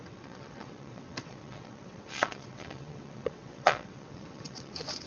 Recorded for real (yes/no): no